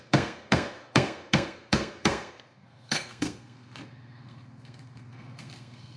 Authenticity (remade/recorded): remade